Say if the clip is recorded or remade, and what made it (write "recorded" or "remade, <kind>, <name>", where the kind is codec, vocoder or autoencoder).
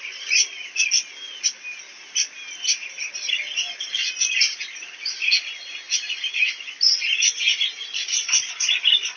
recorded